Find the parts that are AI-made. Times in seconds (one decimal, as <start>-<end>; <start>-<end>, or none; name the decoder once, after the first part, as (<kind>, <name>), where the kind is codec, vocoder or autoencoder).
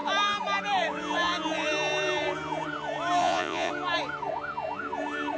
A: 3.2-3.7 (vocoder, Vocos)